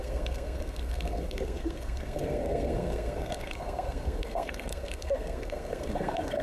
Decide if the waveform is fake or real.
fake